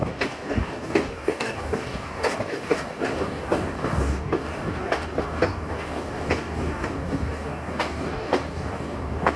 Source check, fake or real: fake